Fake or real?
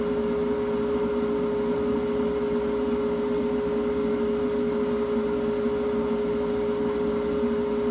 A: real